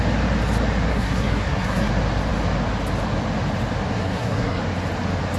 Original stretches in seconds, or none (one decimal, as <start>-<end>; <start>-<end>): 0.0-0.9; 1.9-3.9; 4.6-5.4